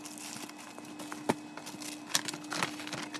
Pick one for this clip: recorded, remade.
recorded